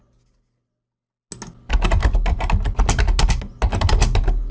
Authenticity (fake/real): real